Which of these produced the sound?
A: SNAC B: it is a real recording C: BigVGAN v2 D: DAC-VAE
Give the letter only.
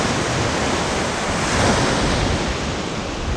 B